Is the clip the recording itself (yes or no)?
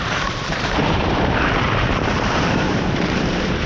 no